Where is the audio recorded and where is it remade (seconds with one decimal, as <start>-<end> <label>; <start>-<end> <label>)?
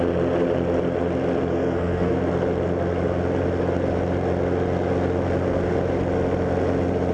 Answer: 0.0-1.5 recorded; 1.5-2.2 remade; 2.2-7.1 recorded